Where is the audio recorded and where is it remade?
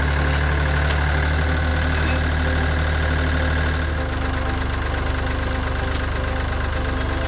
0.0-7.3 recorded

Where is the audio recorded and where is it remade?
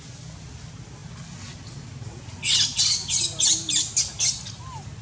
0.0-5.0 recorded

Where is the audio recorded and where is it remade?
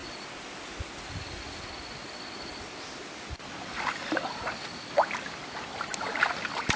0.0-6.8 recorded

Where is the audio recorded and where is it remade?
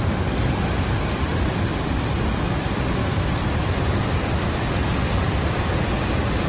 0.0-3.0 recorded; 3.0-3.5 remade; 3.5-6.5 recorded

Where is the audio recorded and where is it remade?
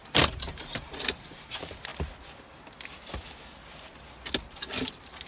0.0-1.9 remade; 1.9-5.3 recorded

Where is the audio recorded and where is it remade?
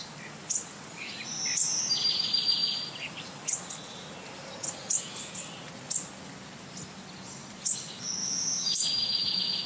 0.0-8.2 recorded; 8.2-9.7 remade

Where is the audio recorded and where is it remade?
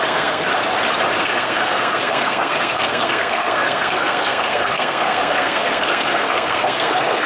0.0-0.5 remade; 0.5-1.2 recorded; 1.2-7.3 remade